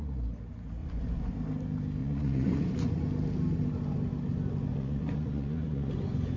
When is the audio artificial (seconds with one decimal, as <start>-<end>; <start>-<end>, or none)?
0.8-1.3; 2.0-2.9; 4.7-5.9